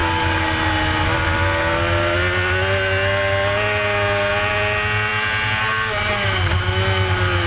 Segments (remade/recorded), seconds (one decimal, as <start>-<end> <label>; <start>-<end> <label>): 0.0-7.5 recorded